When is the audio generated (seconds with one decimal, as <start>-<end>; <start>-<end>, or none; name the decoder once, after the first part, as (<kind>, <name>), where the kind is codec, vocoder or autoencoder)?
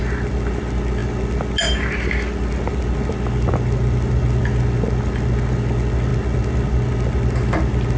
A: none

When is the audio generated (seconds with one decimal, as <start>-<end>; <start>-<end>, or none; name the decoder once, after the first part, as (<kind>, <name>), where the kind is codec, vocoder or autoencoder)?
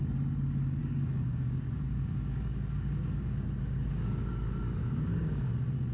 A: 0.8-4.3 (codec, DAC); 4.8-5.5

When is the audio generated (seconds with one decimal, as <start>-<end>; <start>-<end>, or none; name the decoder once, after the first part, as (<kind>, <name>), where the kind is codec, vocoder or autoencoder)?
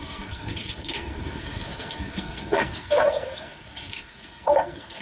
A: 0.0-5.0 (codec, SNAC)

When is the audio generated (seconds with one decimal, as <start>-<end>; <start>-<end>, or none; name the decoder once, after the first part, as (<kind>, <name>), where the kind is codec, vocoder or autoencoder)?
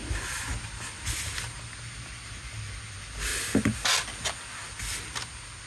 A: none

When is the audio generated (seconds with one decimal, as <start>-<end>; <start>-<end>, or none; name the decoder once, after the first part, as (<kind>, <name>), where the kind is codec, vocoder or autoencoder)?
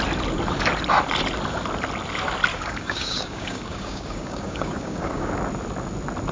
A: 2.5-5.3 (codec, DAC)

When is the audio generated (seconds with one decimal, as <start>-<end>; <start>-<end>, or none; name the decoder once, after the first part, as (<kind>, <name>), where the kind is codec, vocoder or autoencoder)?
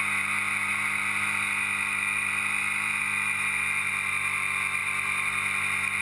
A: 0.7-3.9 (vocoder, BigVGAN v2); 4.8-6.0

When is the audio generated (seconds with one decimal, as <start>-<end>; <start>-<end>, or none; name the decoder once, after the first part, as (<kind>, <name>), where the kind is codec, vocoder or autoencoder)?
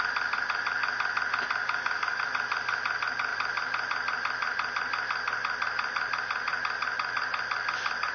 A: 1.6-2.2 (codec, DAC)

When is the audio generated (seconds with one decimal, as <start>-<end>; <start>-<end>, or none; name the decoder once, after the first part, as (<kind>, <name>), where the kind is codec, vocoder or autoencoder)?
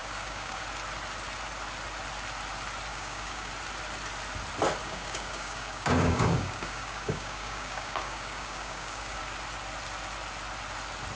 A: 0.0-0.6 (codec, DAC); 2.9-3.5; 4.8-9.2